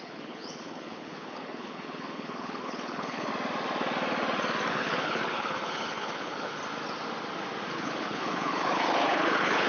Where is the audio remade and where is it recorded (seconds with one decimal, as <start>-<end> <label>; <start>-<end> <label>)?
0.0-3.3 remade; 3.3-4.7 recorded; 4.7-6.6 remade; 6.6-7.7 recorded; 7.7-9.7 remade